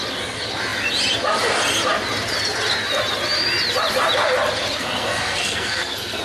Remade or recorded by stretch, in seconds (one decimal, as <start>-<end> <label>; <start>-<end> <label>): 0.0-4.8 recorded; 4.8-6.2 remade